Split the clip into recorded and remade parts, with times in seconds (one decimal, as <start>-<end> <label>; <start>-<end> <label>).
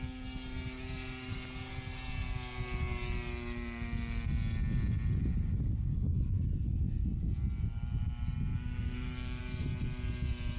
0.0-5.2 recorded; 5.2-5.9 remade; 5.9-8.5 recorded; 8.5-9.4 remade; 9.4-10.6 recorded